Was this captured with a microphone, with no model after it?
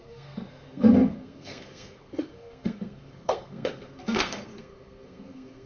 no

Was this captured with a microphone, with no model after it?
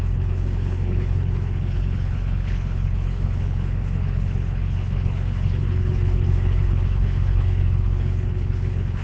no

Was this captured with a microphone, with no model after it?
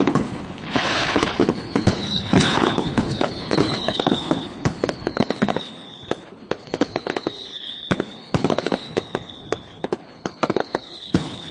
no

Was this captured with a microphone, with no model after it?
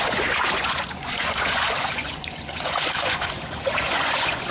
no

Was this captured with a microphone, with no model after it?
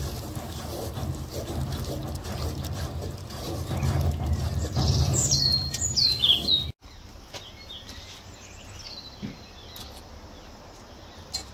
yes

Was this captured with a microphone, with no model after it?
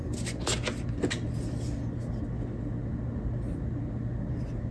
yes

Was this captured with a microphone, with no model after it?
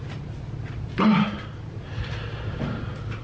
yes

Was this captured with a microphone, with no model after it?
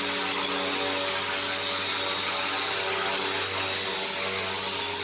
yes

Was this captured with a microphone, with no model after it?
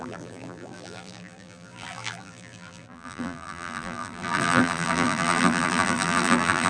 no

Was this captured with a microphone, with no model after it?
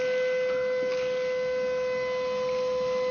yes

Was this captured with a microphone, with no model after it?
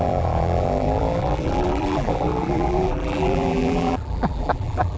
no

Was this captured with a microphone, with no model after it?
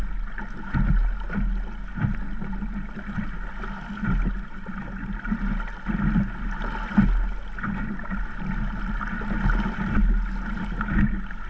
yes